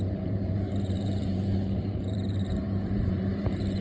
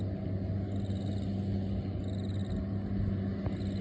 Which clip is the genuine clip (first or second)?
second